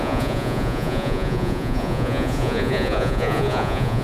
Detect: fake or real fake